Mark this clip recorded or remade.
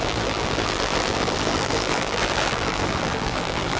remade